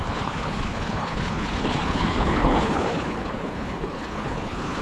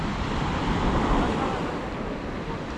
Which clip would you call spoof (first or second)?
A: first